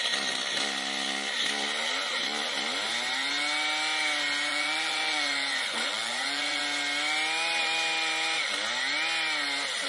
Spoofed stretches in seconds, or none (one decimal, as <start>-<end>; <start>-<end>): 4.5-6.6